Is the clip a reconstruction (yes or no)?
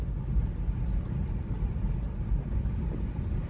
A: no